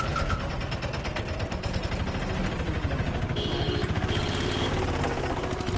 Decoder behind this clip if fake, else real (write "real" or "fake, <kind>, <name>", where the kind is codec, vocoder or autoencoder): real